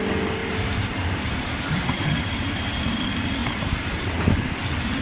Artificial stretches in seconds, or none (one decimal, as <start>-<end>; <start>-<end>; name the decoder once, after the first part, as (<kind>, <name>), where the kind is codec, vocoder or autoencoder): 0.4-3.0 (vocoder, BigVGAN v2); 3.4-4.2